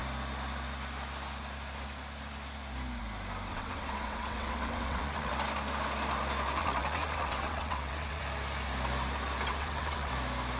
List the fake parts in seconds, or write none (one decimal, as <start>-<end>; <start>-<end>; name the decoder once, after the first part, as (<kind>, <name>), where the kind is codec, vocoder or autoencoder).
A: 3.5-5.3 (vocoder, WaveNeXt); 6.6-8.2; 9.5-10.1